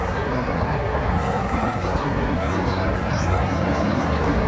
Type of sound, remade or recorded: remade